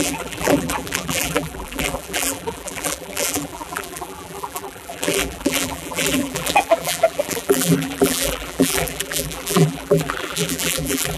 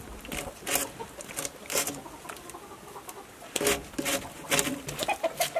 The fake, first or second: first